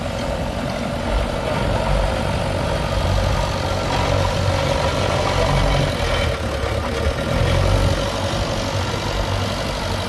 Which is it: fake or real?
real